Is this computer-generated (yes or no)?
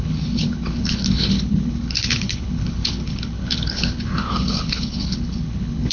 yes